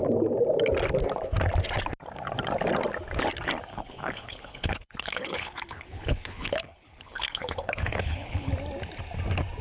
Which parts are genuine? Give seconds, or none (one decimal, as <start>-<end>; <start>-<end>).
0.0-3.7; 8.5-9.6

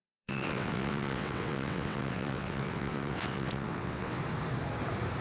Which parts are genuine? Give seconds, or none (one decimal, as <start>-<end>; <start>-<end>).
4.2-5.2

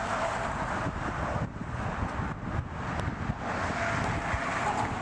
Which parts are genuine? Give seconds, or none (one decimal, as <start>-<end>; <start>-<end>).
0.0-5.0